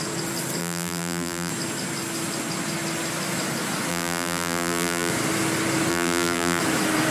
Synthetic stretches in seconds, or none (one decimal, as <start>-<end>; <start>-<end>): 0.6-1.5; 3.9-5.1; 5.9-6.6